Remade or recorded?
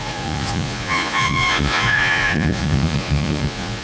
remade